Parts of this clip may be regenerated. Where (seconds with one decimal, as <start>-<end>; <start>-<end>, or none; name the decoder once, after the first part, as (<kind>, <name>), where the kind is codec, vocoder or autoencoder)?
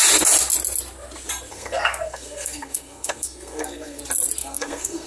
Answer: 1.5-4.0 (codec, SNAC); 4.4-5.1